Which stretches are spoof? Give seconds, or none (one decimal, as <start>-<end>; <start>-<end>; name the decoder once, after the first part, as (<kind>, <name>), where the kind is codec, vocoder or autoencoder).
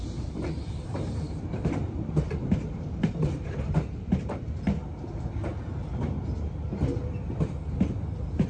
0.0-4.8 (vocoder, BigVGAN v2); 8.0-8.5